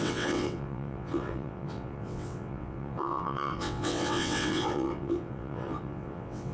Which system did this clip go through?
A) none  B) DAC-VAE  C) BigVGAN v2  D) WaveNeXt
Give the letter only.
D